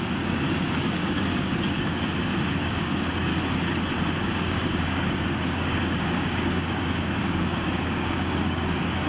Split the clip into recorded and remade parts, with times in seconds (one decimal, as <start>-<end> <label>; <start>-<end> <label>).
0.0-1.9 remade; 1.9-2.6 recorded; 2.6-3.3 remade; 3.3-4.2 recorded; 4.2-9.1 remade